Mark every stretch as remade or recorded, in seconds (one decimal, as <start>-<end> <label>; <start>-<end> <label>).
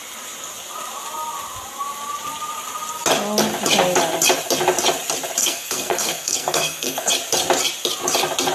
0.0-5.4 recorded; 5.4-7.1 remade; 7.1-8.5 recorded